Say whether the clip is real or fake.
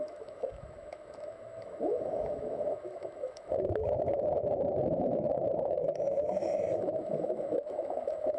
fake